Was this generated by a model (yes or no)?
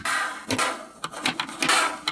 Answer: no